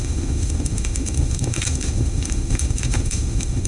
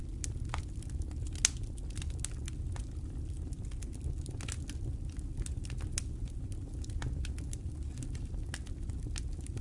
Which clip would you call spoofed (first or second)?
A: first